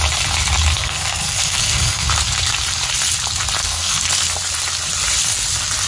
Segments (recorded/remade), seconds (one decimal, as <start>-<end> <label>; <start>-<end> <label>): 0.0-0.7 recorded; 0.7-2.1 remade; 2.1-3.6 recorded; 3.6-4.3 remade; 4.3-5.9 recorded